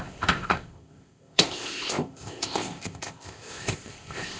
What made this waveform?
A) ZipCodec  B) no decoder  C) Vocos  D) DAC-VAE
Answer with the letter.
A